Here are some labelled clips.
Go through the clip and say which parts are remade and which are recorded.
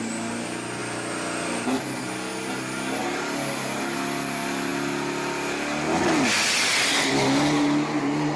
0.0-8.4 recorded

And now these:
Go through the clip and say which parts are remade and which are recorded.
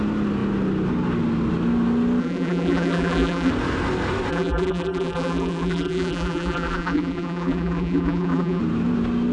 0.0-2.2 recorded; 2.2-3.5 remade; 3.5-4.3 recorded; 4.3-8.6 remade; 8.6-9.3 recorded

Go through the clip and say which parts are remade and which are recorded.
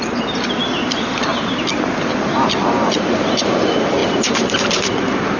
0.0-1.3 remade; 1.3-2.0 recorded; 2.0-5.4 remade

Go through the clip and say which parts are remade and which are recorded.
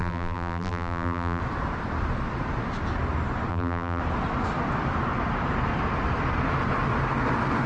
0.0-1.4 remade; 1.4-3.5 recorded; 3.5-4.0 remade; 4.0-7.7 recorded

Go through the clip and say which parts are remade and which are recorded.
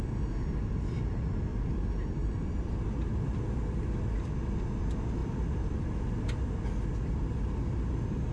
0.0-1.5 recorded; 1.5-3.2 remade; 3.2-5.2 recorded; 5.2-6.1 remade; 6.1-8.3 recorded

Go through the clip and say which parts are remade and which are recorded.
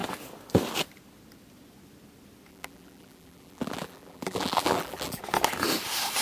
0.0-2.5 recorded; 2.5-5.2 remade; 5.2-6.2 recorded